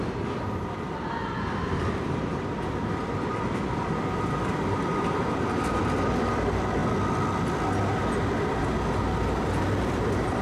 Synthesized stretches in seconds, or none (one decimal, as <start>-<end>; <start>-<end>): 0.0-1.2; 1.9-6.8; 9.6-10.4